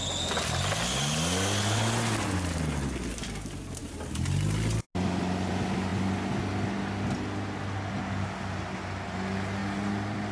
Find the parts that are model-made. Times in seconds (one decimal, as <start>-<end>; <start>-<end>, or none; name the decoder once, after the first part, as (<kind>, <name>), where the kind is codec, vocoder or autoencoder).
none